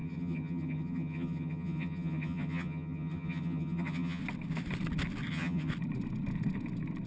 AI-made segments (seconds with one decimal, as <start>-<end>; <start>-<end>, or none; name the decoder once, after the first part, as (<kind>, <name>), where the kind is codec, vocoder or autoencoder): 0.0-4.2 (vocoder, HiFi-GAN); 5.3-5.7